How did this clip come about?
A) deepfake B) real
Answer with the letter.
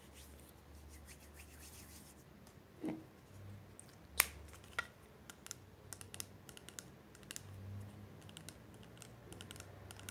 B